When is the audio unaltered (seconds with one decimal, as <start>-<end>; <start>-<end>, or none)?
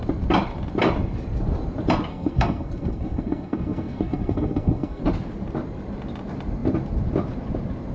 0.0-2.1; 5.0-7.9